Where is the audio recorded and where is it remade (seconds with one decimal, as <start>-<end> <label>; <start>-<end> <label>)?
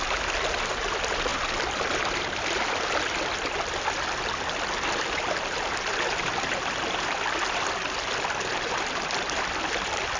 0.0-10.2 recorded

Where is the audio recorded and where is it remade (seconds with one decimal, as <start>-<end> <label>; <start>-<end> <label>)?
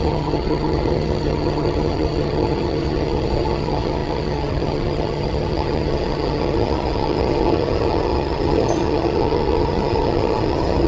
0.0-10.9 remade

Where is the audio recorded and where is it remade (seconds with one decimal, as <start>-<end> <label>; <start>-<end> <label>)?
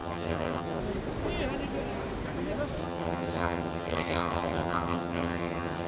0.0-0.8 remade; 0.8-2.8 recorded; 2.8-5.9 remade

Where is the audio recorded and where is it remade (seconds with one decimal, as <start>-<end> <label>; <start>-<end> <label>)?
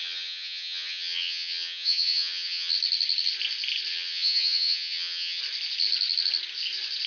0.0-2.7 remade; 2.7-3.9 recorded; 3.9-5.4 remade; 5.4-7.1 recorded